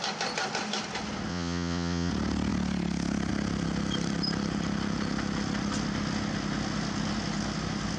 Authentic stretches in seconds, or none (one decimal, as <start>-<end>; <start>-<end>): 0.0-1.3; 2.1-8.0